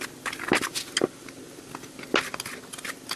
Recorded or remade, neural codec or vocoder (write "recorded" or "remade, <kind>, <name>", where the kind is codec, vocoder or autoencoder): recorded